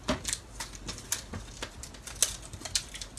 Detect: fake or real real